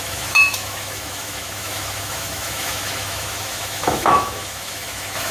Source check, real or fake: fake